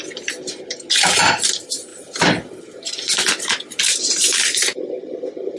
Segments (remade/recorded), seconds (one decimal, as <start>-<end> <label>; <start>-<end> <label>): 0.0-5.6 recorded